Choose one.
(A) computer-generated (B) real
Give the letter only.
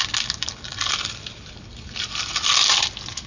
B